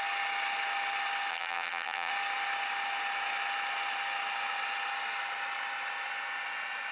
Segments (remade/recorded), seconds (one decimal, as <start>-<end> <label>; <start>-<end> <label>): 0.0-1.3 recorded; 1.3-2.1 remade; 2.1-6.9 recorded